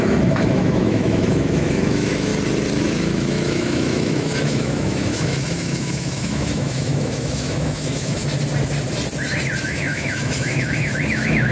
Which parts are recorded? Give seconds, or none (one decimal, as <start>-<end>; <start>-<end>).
2.3-2.8; 8.2-9.6